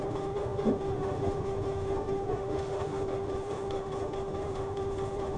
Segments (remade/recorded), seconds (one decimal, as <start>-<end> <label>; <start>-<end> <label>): 0.0-5.4 remade